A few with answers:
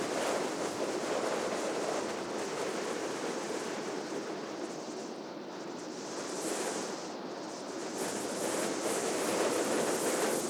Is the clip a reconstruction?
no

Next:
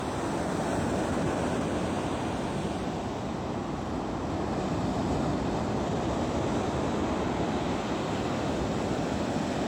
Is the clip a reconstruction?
no